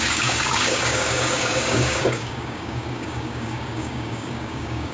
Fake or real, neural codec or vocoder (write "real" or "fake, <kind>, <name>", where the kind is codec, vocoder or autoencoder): fake, codec, DAC